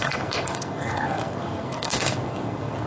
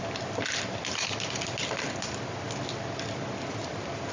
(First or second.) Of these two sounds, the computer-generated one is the first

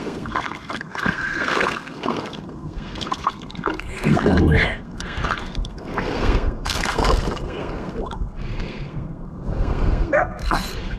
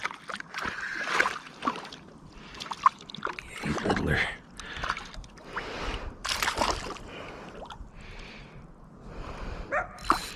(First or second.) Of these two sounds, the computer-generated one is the first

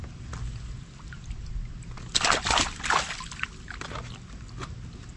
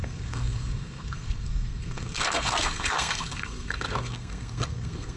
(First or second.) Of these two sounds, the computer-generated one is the second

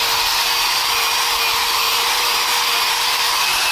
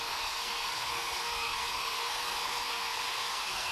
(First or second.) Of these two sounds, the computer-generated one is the second